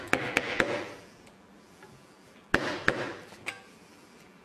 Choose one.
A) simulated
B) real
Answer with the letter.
A